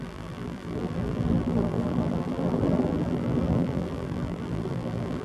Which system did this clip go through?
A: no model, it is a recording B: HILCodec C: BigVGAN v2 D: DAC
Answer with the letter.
C